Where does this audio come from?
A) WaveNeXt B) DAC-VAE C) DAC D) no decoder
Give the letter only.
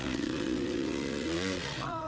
A